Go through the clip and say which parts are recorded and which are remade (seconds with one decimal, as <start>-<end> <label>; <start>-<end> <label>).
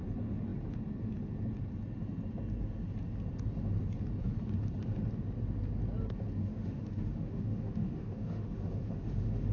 0.0-6.4 recorded; 6.4-9.5 remade